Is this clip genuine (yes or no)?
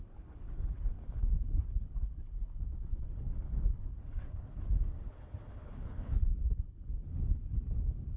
no